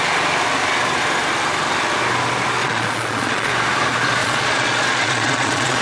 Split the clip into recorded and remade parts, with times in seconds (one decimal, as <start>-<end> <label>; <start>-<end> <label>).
0.0-2.6 recorded; 2.6-3.5 remade; 3.5-4.2 recorded; 4.2-5.8 remade